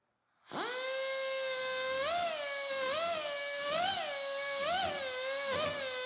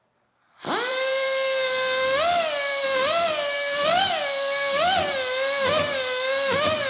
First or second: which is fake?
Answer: second